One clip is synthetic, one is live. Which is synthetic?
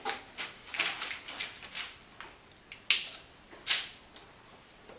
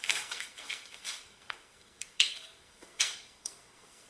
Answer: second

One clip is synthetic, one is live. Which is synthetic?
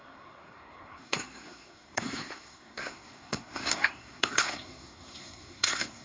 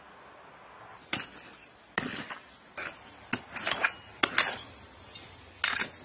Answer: first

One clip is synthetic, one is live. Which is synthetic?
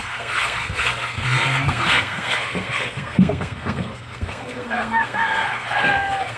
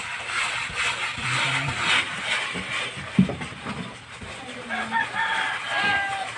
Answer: first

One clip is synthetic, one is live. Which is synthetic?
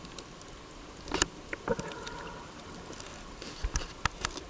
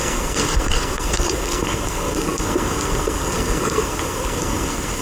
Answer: second